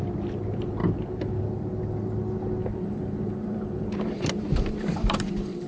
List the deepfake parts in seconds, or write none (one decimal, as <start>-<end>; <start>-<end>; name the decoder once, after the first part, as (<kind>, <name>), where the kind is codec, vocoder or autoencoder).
2.6-5.7 (vocoder, BigVGAN v2)